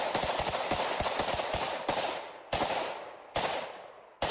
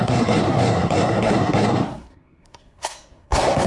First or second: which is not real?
second